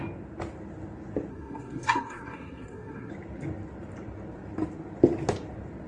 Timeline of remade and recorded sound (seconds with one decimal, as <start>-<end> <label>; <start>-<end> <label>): 0.0-1.3 recorded; 1.3-3.1 remade; 3.1-5.9 recorded